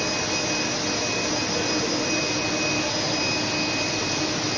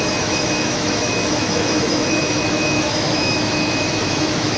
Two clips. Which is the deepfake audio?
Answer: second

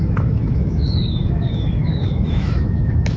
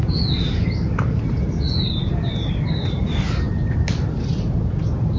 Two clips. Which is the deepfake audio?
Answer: first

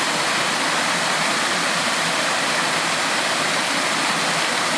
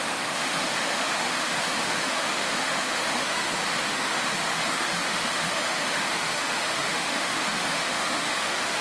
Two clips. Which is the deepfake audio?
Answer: second